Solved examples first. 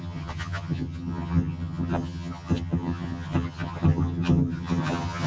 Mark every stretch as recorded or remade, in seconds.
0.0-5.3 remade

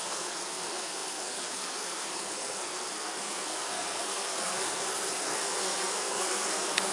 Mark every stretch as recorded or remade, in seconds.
0.0-6.9 remade

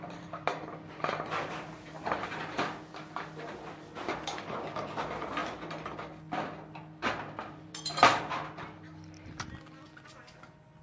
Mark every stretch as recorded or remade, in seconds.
0.0-10.8 recorded

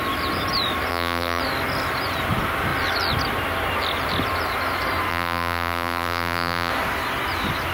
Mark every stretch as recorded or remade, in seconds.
0.0-0.9 recorded; 0.9-1.4 remade; 1.4-5.1 recorded; 5.1-6.7 remade; 6.7-7.7 recorded